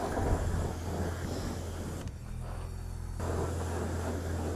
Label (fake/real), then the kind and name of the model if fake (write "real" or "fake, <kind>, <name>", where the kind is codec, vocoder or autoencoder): real